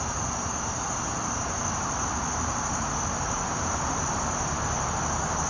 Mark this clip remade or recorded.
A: remade